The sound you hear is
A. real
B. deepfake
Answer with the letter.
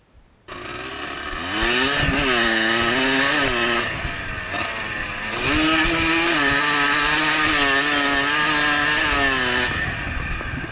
A